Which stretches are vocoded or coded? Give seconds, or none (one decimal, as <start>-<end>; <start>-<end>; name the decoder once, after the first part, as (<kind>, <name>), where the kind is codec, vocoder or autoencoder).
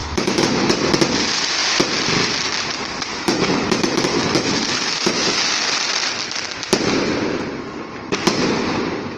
0.0-0.7 (autoencoder, DAC-VAE); 3.1-5.4